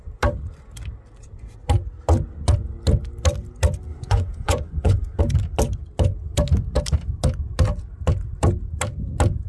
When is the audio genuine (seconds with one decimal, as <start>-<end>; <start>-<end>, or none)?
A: 0.0-3.9; 5.2-9.5

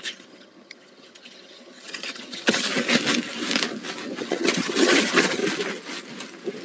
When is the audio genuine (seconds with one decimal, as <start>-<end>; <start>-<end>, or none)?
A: 2.7-4.2; 5.4-6.6

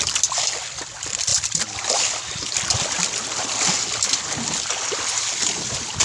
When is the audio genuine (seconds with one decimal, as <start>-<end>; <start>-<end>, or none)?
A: 0.0-6.0